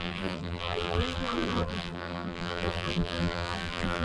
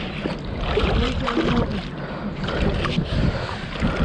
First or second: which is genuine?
second